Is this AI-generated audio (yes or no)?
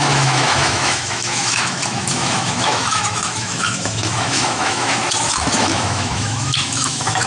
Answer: yes